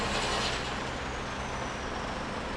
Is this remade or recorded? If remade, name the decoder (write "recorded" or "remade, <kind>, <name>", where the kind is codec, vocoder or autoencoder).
recorded